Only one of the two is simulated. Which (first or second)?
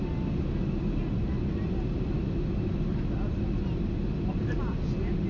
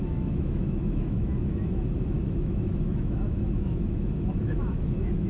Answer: second